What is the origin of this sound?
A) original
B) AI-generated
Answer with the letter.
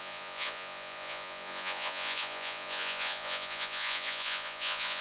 B